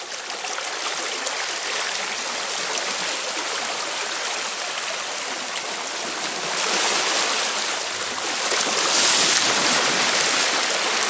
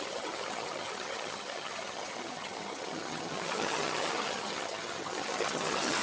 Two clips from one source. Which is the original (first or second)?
first